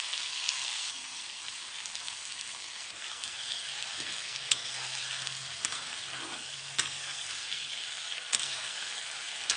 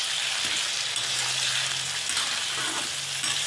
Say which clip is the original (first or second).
second